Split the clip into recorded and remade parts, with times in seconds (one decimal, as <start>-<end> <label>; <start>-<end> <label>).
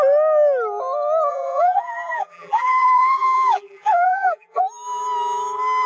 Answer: 0.0-1.3 recorded; 1.3-4.6 remade; 4.6-5.9 recorded